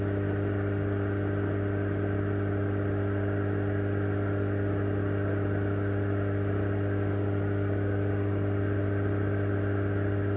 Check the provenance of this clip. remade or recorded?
recorded